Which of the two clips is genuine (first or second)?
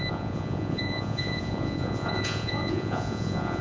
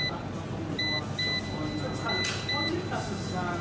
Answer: second